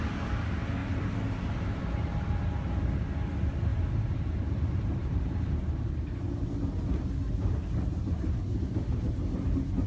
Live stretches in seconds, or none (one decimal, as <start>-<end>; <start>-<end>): 0.0-0.8; 1.8-3.7; 5.9-9.9